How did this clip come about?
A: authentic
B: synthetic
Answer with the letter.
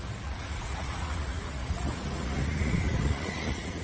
B